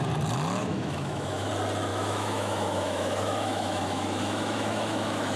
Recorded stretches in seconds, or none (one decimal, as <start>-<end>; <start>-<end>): 0.0-0.6; 1.5-1.9